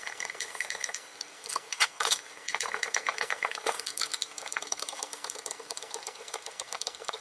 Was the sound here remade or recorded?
remade